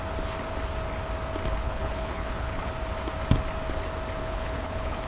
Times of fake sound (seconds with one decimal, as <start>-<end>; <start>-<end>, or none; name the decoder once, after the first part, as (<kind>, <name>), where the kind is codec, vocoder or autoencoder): 1.6-2.7 (codec, HILCodec); 4.2-5.1